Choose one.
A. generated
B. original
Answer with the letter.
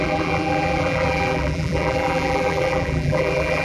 A